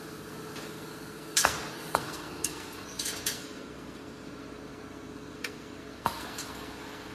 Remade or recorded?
remade